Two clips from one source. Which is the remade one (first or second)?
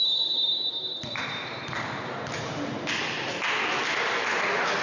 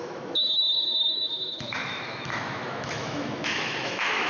second